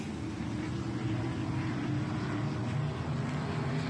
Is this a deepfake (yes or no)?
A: no